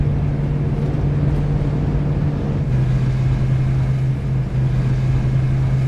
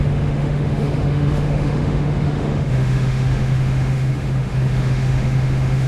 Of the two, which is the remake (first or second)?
second